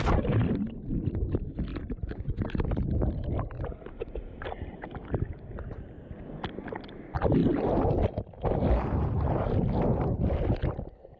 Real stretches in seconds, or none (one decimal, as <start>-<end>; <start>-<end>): 0.0-11.2